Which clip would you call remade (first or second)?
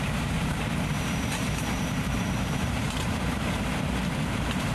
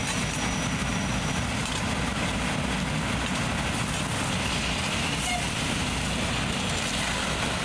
first